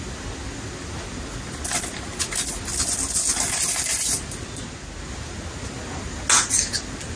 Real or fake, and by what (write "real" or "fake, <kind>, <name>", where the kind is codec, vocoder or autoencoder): real